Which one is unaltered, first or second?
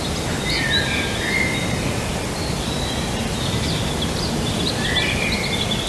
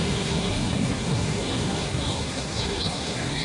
first